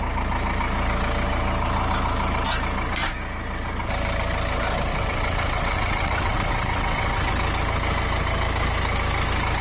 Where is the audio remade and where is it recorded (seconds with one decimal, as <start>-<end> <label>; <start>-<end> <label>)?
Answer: 0.0-4.9 recorded; 4.9-7.3 remade; 7.3-9.6 recorded